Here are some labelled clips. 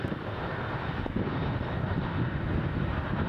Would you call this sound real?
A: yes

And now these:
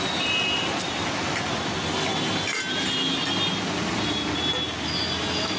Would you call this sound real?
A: yes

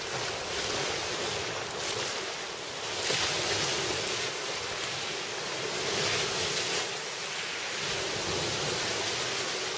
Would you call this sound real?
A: yes